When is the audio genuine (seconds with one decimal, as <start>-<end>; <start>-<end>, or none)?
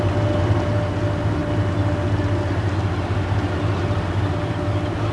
0.0-5.1